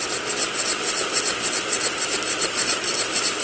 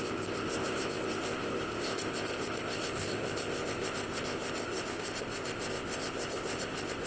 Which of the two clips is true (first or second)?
first